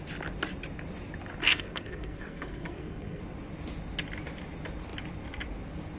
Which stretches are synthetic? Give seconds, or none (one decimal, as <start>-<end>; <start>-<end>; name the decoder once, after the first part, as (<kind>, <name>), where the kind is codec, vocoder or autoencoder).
1.4-3.2 (codec, SNAC)